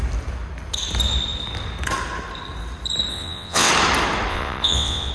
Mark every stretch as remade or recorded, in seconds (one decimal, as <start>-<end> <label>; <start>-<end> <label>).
0.0-3.1 recorded; 3.1-3.7 remade; 3.7-4.3 recorded; 4.3-5.1 remade